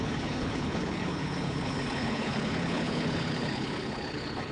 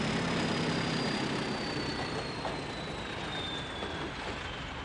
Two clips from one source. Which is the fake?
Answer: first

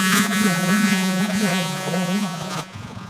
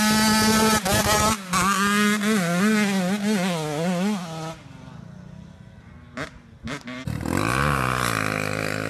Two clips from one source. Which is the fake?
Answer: first